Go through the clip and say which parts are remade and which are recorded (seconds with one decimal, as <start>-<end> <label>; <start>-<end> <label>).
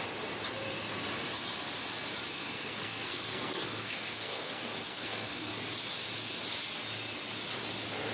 0.0-2.3 recorded; 2.3-5.5 remade; 5.5-8.1 recorded